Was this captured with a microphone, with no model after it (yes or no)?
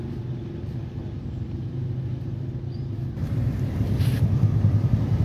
yes